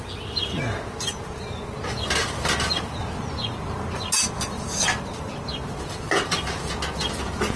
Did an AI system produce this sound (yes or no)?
no